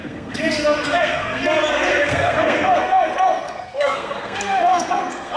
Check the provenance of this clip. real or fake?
fake